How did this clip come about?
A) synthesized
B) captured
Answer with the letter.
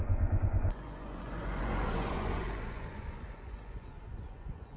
A